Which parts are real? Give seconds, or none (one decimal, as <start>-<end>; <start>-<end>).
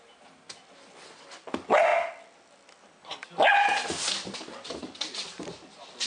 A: 0.0-6.1